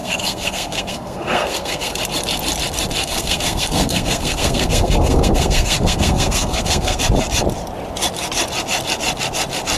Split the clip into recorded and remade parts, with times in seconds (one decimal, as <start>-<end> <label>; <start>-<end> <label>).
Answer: 0.0-2.0 remade; 2.0-3.0 recorded; 3.0-7.0 remade; 7.0-9.8 recorded